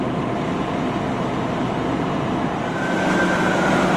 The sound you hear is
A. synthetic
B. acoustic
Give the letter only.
B